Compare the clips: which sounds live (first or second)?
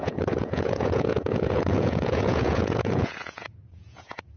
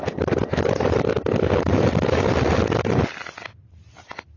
second